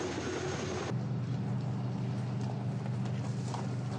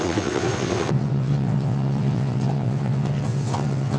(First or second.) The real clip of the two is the first